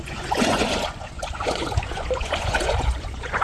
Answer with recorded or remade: remade